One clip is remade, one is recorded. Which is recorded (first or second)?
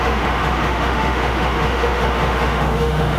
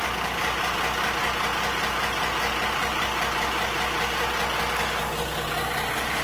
second